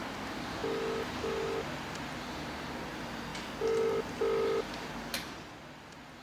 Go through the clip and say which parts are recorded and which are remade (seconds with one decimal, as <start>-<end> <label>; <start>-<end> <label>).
0.0-6.2 recorded